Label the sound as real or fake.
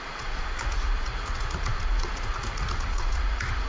fake